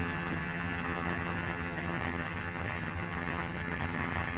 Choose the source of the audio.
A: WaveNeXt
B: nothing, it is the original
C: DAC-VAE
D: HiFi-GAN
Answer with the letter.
D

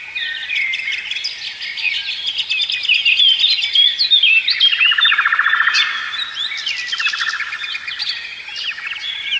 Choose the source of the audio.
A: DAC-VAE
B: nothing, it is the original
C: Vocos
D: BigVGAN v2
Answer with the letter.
B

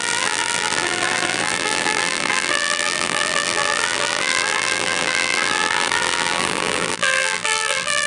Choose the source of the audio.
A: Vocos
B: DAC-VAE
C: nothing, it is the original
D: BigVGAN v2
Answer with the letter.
D